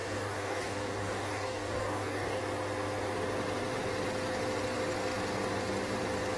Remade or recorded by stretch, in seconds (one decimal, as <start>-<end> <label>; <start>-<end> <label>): 0.0-2.4 remade; 2.4-6.4 recorded